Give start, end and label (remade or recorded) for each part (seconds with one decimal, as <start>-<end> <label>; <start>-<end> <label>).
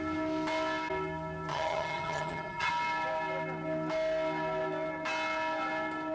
0.0-1.5 recorded; 1.5-2.7 remade; 2.7-6.1 recorded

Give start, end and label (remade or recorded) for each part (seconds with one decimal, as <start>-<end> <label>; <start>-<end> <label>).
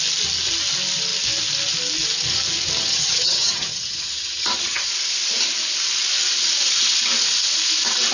0.0-2.9 recorded; 2.9-4.9 remade; 4.9-8.1 recorded